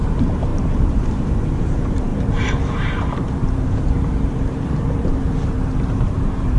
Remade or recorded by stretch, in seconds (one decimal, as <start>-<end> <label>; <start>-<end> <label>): 0.0-6.6 remade